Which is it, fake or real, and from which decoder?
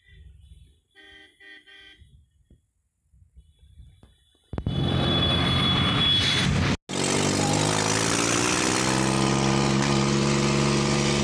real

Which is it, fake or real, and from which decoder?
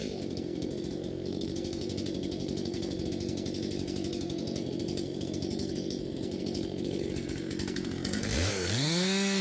fake, codec, SNAC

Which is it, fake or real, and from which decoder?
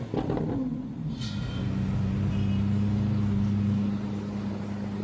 real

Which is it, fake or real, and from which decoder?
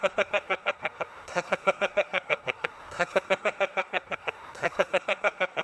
fake, codec, SNAC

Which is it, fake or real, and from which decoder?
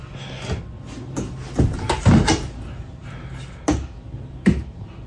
real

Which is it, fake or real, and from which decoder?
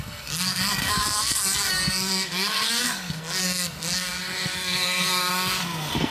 fake, codec, SNAC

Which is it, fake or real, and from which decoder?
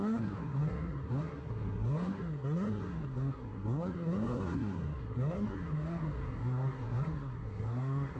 fake, codec, SNAC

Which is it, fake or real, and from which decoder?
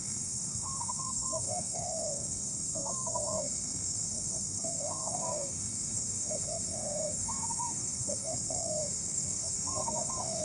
fake, codec, SNAC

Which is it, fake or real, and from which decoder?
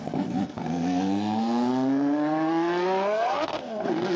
fake, codec, SNAC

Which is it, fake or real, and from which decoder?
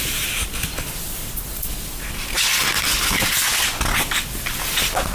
real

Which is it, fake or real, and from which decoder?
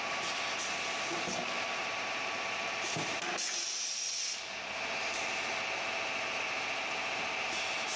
real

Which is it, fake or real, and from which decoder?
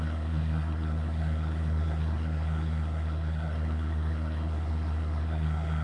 fake, codec, SNAC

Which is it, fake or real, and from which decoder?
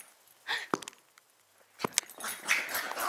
real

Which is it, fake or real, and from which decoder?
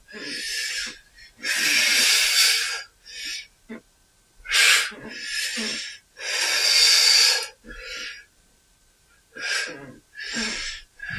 real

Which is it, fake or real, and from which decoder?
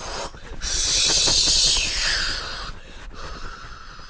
real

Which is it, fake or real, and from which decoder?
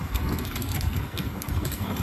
fake, codec, SNAC